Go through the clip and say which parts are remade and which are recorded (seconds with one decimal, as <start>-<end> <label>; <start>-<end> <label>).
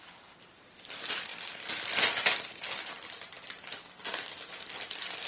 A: 0.0-5.3 recorded